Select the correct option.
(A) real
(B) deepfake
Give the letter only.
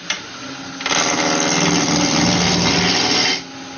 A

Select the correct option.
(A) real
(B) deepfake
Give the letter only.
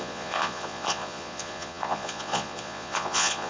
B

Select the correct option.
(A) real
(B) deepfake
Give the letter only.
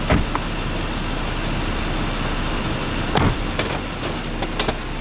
A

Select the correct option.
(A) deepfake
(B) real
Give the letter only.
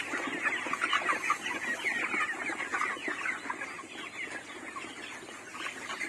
B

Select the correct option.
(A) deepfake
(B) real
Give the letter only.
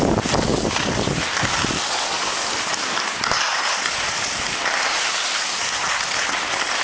B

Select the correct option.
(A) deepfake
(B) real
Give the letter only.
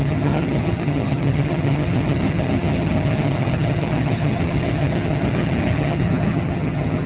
A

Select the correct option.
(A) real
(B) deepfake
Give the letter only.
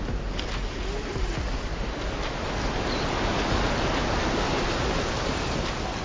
A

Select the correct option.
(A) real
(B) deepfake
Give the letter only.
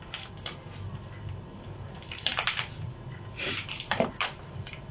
B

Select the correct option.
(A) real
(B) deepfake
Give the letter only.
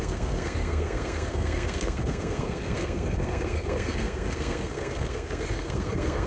B